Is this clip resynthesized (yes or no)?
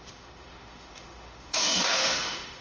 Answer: yes